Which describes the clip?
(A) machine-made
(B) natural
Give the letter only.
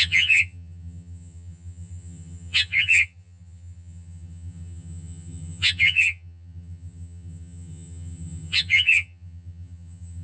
A